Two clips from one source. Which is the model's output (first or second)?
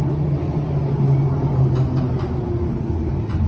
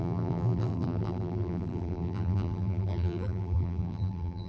second